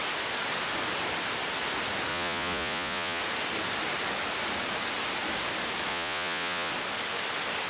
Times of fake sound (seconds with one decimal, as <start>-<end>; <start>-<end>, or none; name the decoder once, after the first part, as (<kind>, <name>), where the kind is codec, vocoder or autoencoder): 2.1-3.2 (vocoder, Vocos); 5.9-6.7